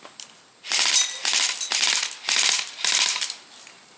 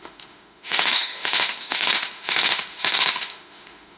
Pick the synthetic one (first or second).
second